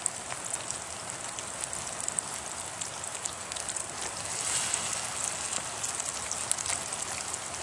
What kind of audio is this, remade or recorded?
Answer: recorded